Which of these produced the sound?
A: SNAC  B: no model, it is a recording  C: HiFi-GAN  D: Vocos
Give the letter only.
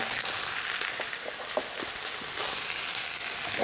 B